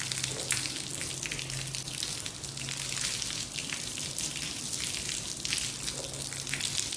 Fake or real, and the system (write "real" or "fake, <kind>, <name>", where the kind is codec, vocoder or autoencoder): real